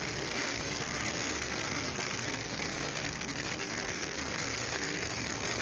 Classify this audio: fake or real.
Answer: fake